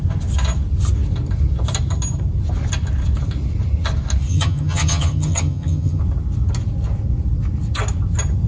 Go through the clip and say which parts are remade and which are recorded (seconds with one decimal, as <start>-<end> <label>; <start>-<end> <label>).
0.0-4.3 recorded; 4.3-6.0 remade; 6.0-8.5 recorded